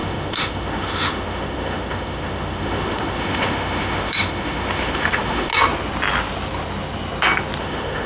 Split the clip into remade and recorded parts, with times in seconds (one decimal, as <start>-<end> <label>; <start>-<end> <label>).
0.0-5.5 remade; 5.5-7.6 recorded; 7.6-8.1 remade